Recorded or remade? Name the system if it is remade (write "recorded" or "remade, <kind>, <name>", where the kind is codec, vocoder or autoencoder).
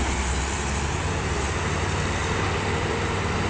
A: recorded